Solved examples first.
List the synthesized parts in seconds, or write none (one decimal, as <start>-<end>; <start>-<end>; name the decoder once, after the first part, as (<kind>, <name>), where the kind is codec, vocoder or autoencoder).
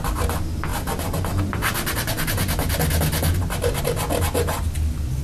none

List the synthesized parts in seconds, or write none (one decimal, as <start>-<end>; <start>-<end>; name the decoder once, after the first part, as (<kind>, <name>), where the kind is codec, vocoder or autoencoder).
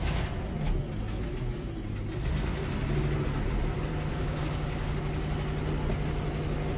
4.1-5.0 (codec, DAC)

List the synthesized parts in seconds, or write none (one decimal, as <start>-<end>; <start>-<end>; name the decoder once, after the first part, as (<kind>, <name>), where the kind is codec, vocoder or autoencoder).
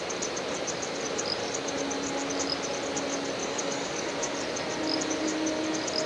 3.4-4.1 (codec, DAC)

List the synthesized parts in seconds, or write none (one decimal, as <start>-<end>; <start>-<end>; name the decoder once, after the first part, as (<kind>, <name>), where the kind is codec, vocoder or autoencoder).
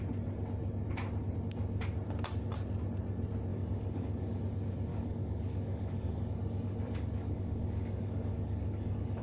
3.5-4.4 (codec, DAC); 4.9-9.2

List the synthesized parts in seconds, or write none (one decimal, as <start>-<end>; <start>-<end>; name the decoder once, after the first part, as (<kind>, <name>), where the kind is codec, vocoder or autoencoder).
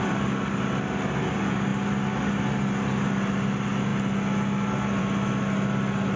none